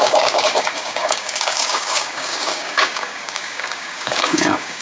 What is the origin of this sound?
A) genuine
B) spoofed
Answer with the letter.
B